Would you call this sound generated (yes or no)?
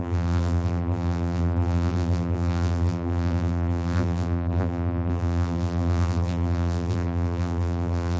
yes